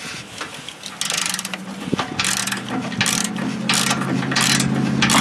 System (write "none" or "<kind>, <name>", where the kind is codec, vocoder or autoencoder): none